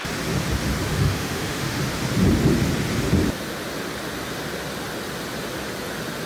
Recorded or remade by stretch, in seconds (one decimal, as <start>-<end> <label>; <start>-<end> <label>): 0.0-0.9 recorded; 0.9-1.8 remade; 1.8-6.3 recorded